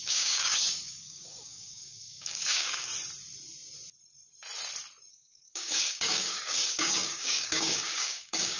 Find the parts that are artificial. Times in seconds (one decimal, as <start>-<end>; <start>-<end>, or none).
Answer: 0.0-2.9; 5.1-8.6